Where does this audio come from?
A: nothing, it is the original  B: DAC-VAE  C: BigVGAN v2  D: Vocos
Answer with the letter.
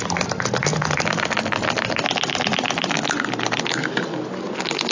A